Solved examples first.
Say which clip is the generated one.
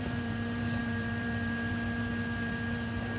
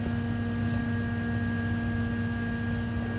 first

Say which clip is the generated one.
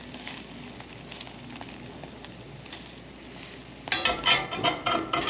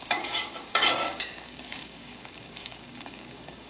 second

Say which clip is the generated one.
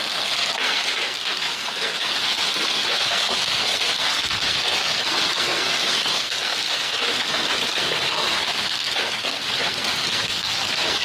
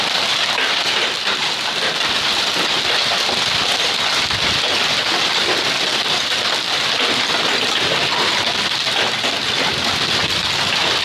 first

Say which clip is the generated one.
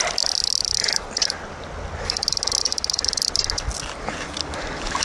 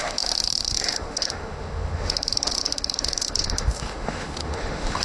second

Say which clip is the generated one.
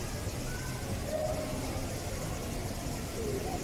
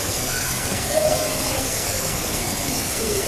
second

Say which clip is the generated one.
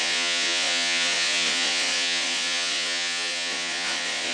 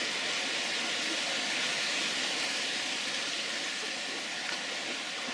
first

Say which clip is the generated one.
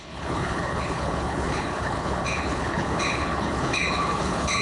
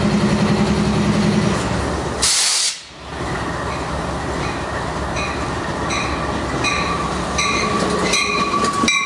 first